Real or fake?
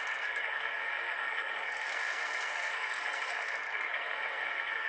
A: fake